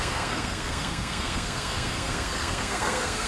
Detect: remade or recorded remade